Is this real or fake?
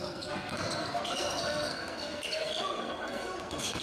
fake